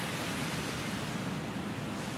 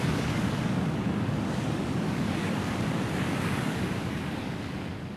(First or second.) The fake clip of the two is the second